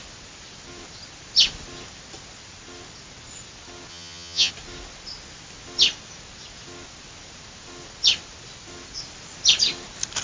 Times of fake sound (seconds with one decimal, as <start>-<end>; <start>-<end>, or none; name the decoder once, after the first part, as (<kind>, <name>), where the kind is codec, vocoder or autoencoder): 3.9-4.5 (vocoder, HiFi-GAN)